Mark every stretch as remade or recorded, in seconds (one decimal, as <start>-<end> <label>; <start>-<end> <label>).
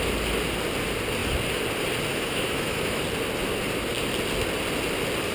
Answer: 0.0-2.1 recorded; 2.1-3.0 remade; 3.0-5.3 recorded